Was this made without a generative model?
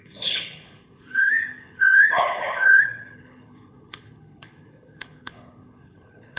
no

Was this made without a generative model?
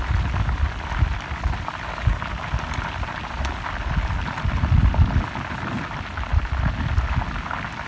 yes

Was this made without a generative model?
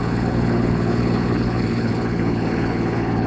no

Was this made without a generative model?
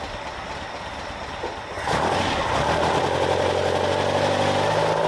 yes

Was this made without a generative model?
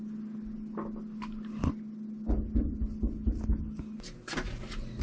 yes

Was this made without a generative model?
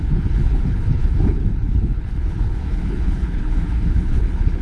no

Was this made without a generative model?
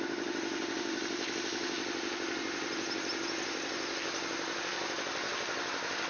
yes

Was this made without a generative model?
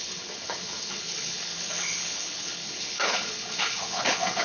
no